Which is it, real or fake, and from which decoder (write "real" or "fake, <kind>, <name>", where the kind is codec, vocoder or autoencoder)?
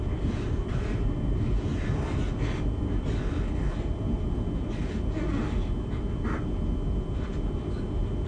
real